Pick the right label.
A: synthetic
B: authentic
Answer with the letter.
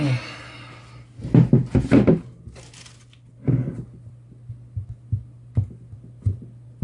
B